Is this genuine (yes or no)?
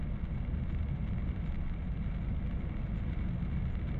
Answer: yes